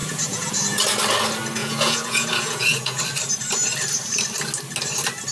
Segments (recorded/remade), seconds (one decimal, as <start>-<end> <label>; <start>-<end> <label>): 0.0-0.8 remade; 0.8-1.6 recorded; 1.6-3.0 remade; 3.0-5.3 recorded